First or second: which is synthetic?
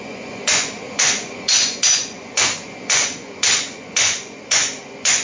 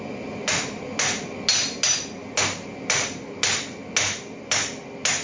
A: first